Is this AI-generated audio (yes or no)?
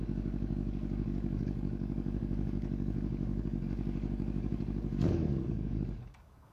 yes